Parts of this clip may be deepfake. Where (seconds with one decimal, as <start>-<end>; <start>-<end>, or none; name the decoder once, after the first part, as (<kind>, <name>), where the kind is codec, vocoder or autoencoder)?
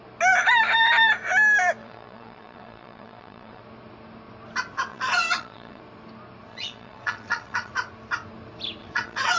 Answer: 1.8-3.6 (vocoder, WaveNeXt); 4.9-5.8; 6.5-7.7; 8.8-9.4